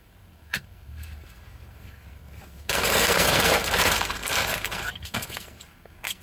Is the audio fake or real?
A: fake